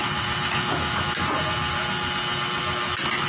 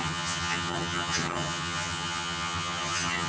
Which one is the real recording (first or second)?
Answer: first